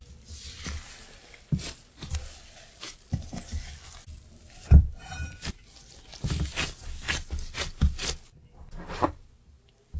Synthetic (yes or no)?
no